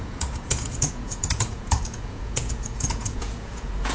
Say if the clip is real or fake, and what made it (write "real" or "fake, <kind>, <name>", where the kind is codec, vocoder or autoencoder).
fake, vocoder, Vocos